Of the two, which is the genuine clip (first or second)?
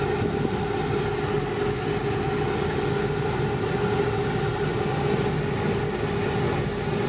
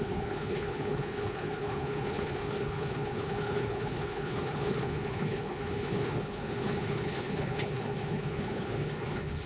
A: first